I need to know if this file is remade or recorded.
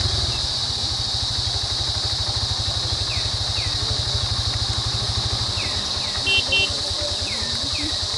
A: recorded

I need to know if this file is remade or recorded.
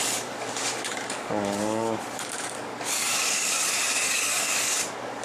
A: remade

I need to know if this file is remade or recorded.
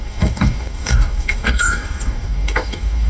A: remade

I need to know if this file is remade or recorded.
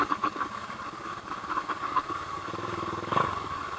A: remade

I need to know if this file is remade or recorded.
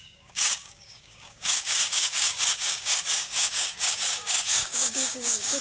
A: remade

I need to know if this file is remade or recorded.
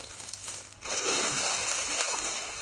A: remade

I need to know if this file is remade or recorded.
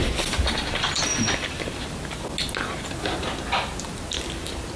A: recorded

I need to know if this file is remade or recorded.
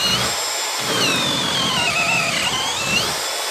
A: recorded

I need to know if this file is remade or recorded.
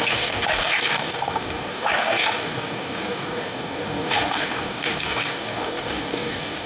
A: remade